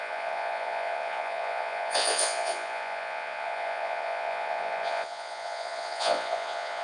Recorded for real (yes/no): no